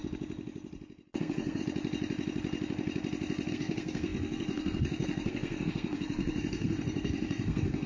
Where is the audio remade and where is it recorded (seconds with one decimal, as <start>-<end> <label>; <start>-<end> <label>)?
0.0-1.2 recorded; 1.2-1.6 remade; 1.6-3.5 recorded; 3.5-7.9 remade